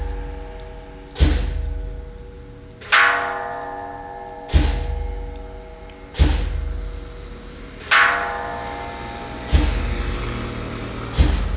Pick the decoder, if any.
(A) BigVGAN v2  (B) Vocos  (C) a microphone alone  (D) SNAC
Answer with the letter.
C